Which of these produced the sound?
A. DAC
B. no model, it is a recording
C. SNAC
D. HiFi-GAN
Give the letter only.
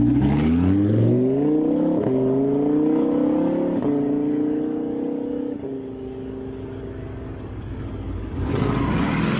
A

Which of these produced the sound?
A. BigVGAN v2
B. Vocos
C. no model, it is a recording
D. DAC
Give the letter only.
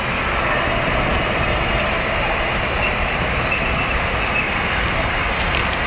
C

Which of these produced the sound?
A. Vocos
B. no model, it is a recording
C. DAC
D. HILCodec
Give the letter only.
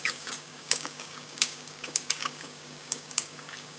C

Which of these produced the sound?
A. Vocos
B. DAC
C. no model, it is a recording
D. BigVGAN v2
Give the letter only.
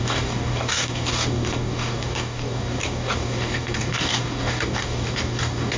B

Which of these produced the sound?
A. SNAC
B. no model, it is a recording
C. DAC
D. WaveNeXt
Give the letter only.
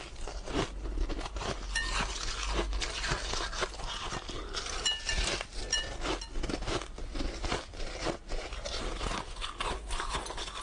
B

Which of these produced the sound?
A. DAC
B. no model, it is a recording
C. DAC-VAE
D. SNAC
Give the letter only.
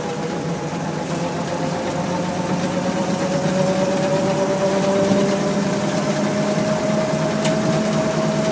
B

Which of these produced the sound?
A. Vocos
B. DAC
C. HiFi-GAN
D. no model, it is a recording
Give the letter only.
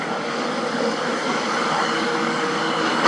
B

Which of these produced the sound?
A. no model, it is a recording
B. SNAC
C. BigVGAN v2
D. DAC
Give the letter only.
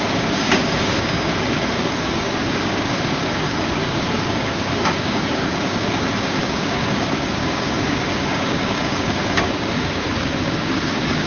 D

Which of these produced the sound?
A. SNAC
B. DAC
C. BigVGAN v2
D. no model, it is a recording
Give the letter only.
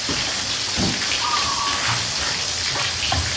D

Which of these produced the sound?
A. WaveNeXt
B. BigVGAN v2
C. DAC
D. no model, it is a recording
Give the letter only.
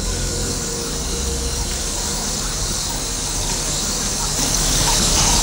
C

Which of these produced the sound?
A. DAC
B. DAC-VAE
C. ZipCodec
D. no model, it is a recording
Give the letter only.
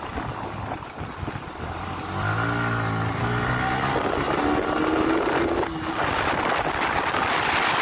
D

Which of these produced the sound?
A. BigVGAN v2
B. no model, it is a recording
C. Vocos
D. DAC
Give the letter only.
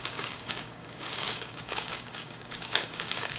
D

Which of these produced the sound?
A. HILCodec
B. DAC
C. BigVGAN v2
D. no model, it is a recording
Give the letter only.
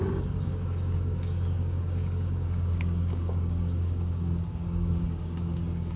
B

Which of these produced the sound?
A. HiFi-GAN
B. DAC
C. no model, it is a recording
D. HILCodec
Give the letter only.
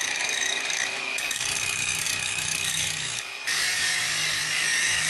B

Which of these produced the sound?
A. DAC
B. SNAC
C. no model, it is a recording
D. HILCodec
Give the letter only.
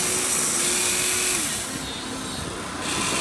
C